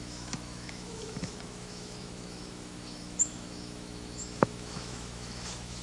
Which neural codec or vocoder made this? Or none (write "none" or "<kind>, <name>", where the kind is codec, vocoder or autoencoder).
autoencoder, DAC-VAE